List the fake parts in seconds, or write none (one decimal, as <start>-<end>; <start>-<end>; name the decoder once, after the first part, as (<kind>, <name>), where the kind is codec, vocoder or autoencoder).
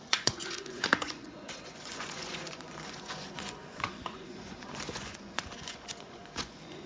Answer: 0.0-6.9 (vocoder, Vocos)